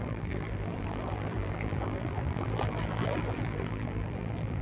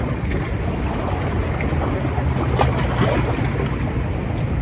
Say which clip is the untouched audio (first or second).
second